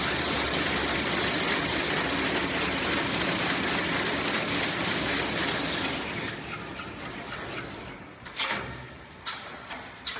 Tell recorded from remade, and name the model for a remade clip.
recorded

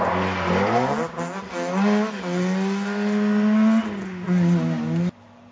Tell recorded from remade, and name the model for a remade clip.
recorded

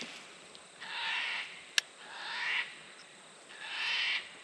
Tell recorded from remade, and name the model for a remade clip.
recorded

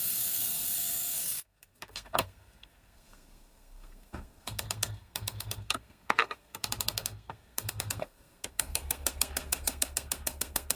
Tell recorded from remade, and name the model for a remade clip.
remade, codec, SNAC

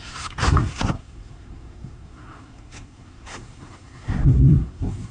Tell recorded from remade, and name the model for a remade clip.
remade, codec, SNAC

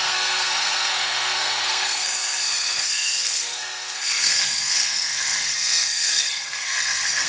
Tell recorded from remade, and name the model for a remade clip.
remade, codec, SNAC